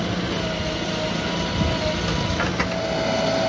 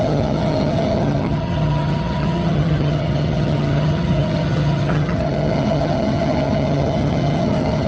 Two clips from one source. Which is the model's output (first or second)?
second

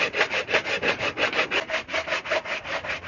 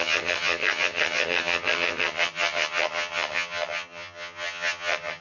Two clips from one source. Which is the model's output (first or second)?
second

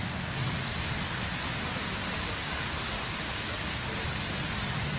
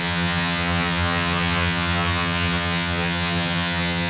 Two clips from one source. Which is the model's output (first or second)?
second